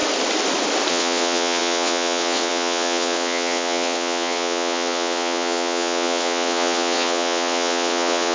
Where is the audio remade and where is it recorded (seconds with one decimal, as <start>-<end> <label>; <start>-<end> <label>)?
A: 0.0-0.9 recorded; 0.9-8.3 remade